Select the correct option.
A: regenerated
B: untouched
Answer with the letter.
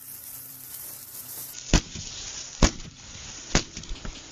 A